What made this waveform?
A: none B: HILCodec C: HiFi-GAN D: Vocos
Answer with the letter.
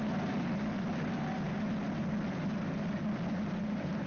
A